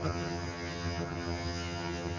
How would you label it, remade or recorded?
remade